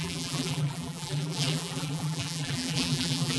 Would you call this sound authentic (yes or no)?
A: no